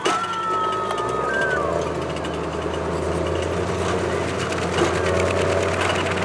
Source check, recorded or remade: recorded